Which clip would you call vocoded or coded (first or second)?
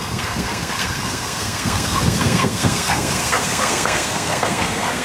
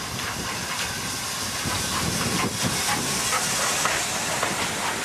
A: first